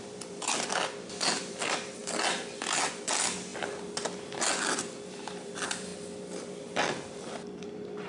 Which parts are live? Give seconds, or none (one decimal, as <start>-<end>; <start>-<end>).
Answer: 0.7-1.4; 2.0-3.1; 3.5-4.1; 5.9-7.6